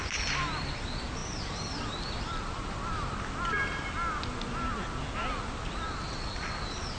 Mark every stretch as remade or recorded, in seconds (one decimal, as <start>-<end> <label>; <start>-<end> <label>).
0.0-1.2 recorded; 1.2-2.1 remade; 2.1-7.0 recorded